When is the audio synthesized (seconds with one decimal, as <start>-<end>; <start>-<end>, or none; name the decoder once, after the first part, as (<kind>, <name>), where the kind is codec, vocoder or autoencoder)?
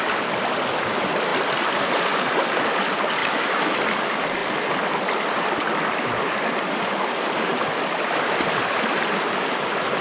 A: 3.2-3.8 (autoencoder, DAC-VAE)